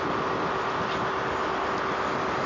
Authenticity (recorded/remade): recorded